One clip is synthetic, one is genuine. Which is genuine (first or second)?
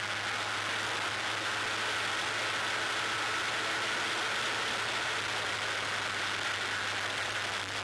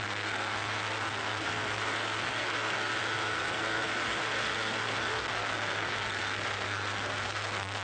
first